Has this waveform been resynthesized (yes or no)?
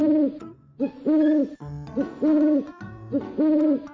yes